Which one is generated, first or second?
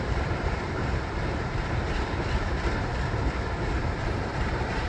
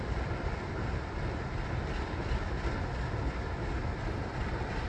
first